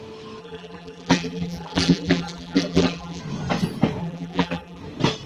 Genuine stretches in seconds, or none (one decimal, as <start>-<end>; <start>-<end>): 0.0-0.4; 3.2-4.0; 4.8-5.3